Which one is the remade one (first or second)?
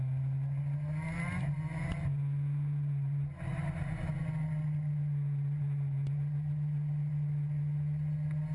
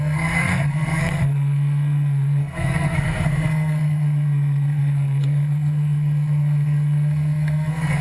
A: second